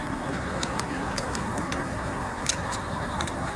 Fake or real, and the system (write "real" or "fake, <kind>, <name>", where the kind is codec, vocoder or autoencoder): fake, codec, SNAC